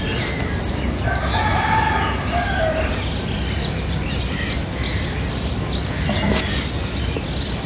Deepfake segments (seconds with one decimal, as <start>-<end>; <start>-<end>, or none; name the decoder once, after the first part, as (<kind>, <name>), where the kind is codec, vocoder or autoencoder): none